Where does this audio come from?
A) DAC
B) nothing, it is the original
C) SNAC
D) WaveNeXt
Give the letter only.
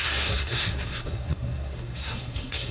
C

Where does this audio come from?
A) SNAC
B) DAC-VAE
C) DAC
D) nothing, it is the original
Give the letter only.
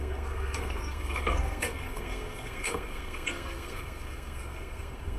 A